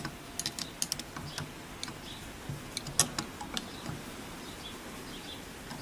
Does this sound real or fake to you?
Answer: real